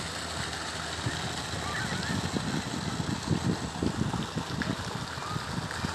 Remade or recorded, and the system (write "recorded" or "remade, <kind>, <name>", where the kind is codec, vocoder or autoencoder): recorded